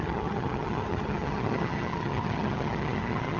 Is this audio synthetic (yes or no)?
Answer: yes